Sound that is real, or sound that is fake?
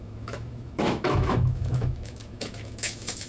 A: fake